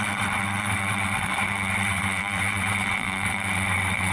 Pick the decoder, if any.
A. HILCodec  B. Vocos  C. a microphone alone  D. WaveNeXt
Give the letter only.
D